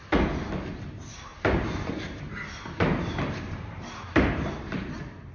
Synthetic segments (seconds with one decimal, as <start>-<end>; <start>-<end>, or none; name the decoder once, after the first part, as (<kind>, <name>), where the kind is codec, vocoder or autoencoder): 1.3-4.5 (vocoder, BigVGAN v2)